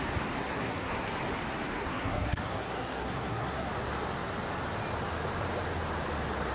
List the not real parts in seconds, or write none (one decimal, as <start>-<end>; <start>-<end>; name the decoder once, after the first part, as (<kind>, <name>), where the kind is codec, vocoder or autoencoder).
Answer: 0.4-1.2 (codec, SNAC); 1.7-3.7